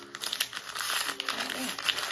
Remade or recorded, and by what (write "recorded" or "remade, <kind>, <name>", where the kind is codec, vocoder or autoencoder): recorded